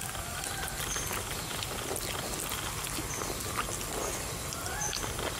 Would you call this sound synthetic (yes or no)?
no